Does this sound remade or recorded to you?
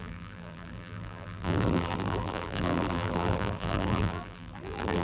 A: remade